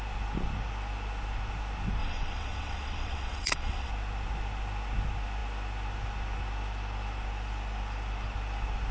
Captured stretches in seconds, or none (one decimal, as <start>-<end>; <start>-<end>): 0.0-2.0; 3.9-8.9

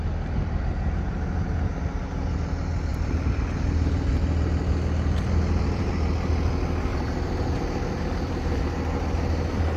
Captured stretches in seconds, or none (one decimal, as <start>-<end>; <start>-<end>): 0.0-2.9; 5.9-6.9; 8.7-9.8

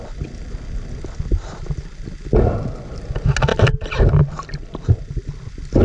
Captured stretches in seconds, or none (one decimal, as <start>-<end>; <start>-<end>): 0.0-5.8

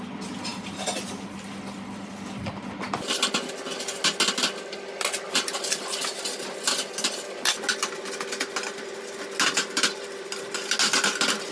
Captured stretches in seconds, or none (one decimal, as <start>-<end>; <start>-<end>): 0.0-11.5